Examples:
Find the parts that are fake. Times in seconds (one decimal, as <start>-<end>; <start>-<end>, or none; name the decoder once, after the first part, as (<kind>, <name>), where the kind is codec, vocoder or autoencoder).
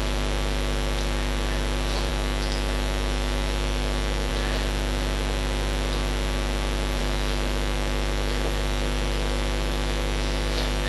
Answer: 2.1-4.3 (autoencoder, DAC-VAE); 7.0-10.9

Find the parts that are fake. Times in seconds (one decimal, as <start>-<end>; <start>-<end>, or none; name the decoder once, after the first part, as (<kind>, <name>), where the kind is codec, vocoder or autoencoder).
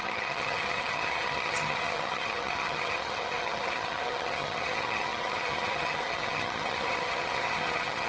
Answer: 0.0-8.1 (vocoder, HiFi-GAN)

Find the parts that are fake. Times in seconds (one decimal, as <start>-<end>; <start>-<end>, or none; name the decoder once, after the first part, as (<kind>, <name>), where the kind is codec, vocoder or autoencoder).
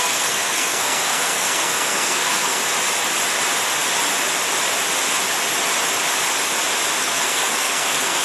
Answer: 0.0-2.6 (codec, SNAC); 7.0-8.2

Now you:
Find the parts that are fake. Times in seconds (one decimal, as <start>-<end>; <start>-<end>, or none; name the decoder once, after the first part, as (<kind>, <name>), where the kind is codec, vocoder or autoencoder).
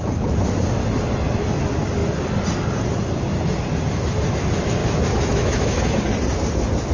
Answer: 4.8-6.0 (autoencoder, DAC-VAE)